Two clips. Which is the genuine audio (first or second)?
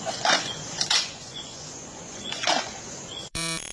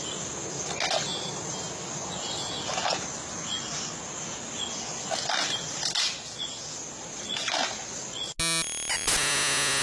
second